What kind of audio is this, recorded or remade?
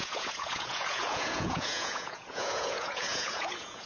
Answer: remade